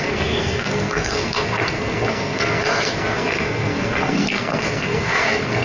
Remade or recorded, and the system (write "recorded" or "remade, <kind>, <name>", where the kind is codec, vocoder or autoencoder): remade, codec, SNAC